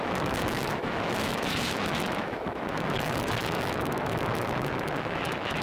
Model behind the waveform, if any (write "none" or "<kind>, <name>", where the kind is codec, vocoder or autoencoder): autoencoder, DAC-VAE